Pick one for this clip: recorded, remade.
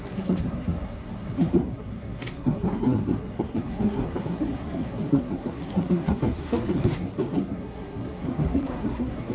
remade